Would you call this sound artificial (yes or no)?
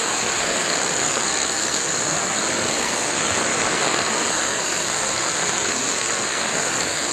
yes